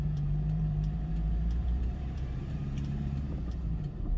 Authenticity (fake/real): fake